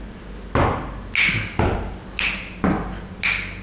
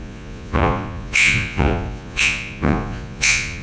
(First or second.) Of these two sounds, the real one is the first